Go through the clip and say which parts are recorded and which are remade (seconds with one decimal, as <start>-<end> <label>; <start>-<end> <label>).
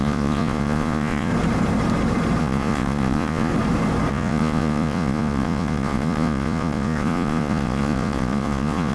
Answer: 0.0-1.3 remade; 1.3-2.4 recorded; 2.4-3.5 remade; 3.5-4.1 recorded; 4.1-8.9 remade